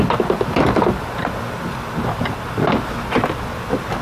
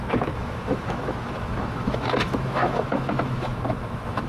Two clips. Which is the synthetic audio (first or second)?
second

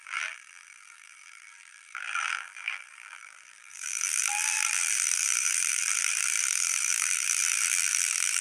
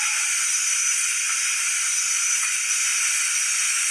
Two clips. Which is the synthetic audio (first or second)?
first